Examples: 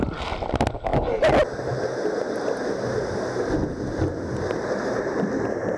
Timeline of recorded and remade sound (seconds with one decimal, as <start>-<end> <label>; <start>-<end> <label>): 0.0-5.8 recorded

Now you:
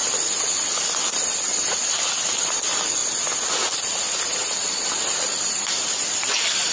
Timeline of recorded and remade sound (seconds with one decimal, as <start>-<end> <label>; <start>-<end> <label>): 0.0-6.7 recorded

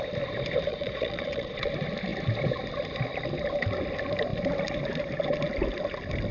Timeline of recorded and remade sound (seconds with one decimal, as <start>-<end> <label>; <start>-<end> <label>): 0.0-0.7 recorded; 0.7-1.7 remade; 1.7-6.3 recorded

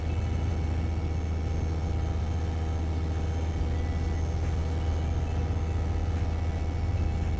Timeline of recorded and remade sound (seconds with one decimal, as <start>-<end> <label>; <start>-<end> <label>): 0.0-7.4 recorded

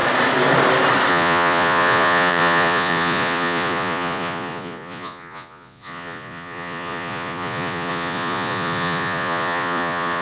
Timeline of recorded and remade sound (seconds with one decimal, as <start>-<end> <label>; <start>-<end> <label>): 0.0-1.1 recorded; 1.1-10.2 remade

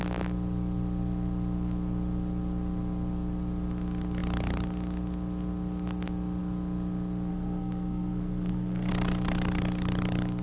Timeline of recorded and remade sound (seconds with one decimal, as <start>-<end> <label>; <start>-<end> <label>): 0.0-7.3 recorded; 7.3-8.9 remade; 8.9-10.4 recorded